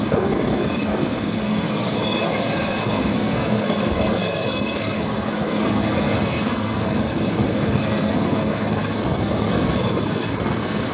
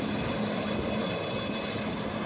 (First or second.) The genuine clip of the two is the second